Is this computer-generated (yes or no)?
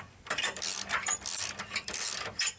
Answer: yes